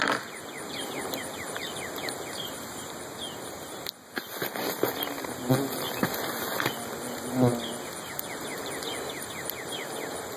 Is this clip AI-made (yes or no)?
no